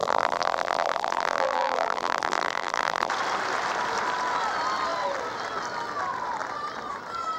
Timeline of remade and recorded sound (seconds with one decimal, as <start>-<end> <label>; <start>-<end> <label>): 0.0-3.1 remade; 3.1-7.4 recorded